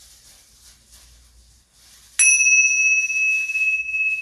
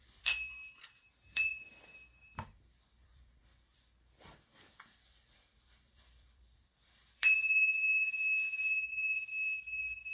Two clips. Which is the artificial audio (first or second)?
second